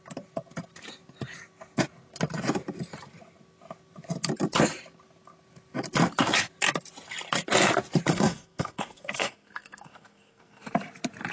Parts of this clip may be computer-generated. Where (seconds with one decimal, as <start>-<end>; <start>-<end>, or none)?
8.1-10.6